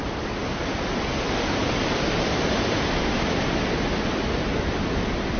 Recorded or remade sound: recorded